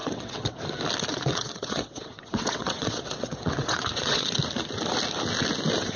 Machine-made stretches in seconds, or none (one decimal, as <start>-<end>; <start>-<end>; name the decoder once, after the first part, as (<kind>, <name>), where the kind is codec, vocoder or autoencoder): 0.0-0.6 (vocoder, WaveNeXt); 1.1-4.4